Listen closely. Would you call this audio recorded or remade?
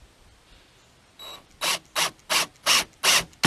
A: recorded